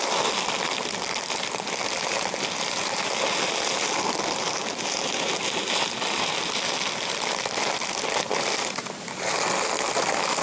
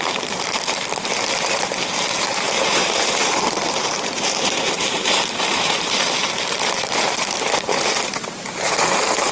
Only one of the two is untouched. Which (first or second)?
first